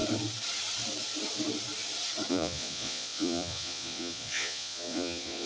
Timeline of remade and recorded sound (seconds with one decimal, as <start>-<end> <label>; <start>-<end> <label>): 0.0-2.3 recorded; 2.3-5.5 remade